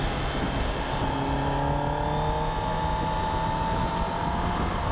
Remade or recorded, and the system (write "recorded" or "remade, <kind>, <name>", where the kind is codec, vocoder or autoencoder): recorded